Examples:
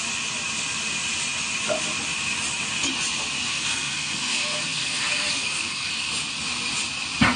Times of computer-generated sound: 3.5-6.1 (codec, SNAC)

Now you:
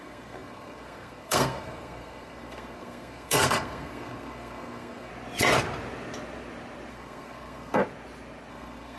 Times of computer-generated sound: 0.0-5.1 (codec, SNAC); 6.9-7.8; 8.5-9.0

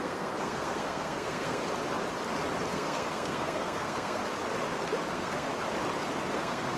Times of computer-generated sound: 0.0-1.6 (codec, SNAC); 2.7-4.2; 5.1-5.5; 6.3-6.8

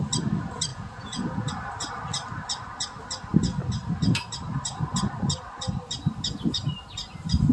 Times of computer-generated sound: 0.7-1.5 (vocoder, Vocos)

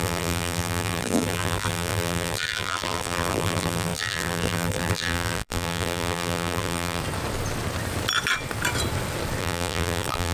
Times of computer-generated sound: 0.0-7.0 (vocoder, BigVGAN v2); 9.4-10.3

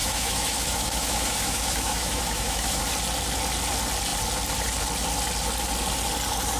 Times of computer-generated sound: 0.0-2.8 (autoencoder, DAC-VAE)

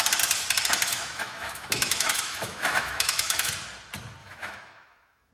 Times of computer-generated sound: 0.9-3.5 (autoencoder, DAC-VAE); 4.2-5.3

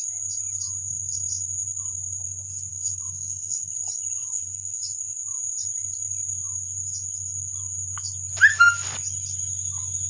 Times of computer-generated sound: 2.7-3.7 (codec, SNAC); 4.2-4.8